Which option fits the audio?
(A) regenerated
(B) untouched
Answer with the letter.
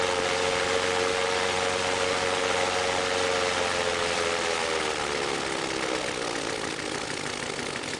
B